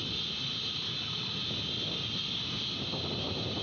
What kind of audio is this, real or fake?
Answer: real